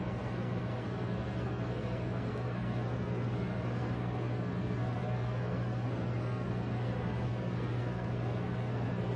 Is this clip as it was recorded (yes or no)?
no